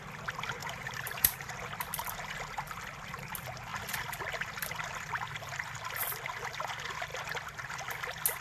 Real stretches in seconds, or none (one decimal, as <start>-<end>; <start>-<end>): 0.0-0.6; 1.5-8.4